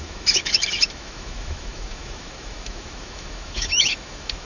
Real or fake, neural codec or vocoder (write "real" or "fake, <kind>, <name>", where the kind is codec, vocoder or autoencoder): fake, autoencoder, DAC-VAE